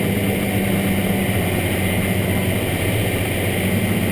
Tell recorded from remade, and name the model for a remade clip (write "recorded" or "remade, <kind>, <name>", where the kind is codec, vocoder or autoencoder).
recorded